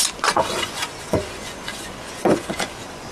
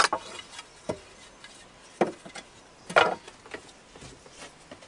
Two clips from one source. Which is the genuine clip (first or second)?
second